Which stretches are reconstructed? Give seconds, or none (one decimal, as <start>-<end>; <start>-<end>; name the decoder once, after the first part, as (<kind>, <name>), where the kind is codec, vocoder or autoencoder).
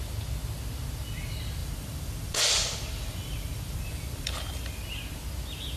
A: 1.6-4.8 (vocoder, BigVGAN v2)